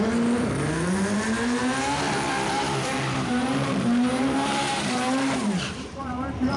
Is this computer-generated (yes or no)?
yes